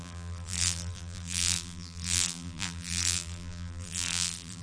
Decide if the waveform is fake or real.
fake